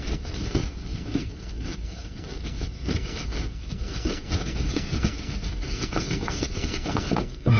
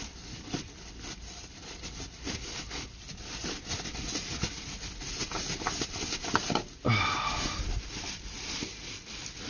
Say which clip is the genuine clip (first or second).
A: second